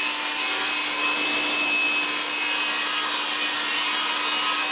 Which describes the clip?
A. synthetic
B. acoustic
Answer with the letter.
B